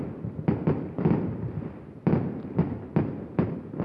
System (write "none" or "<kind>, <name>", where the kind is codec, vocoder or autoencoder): none